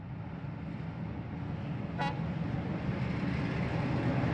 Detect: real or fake real